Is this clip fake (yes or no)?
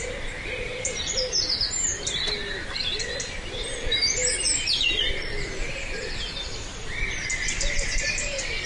yes